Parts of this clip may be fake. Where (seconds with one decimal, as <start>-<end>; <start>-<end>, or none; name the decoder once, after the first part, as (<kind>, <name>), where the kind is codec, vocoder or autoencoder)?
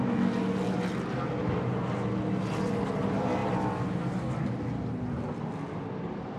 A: none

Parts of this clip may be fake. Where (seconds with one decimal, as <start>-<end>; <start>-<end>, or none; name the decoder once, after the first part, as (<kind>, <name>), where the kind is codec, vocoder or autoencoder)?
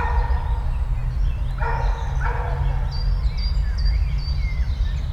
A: none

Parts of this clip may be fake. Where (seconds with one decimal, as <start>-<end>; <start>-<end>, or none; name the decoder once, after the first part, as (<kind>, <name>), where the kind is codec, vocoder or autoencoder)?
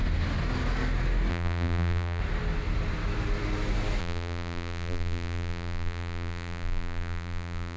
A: 1.3-2.2 (vocoder, BigVGAN v2); 4.0-7.8